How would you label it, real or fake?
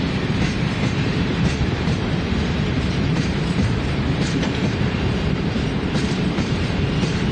fake